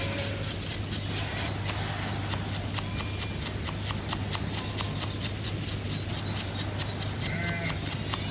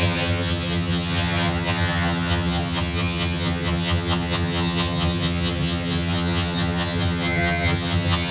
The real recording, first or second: first